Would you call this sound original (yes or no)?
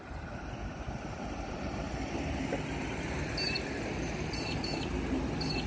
yes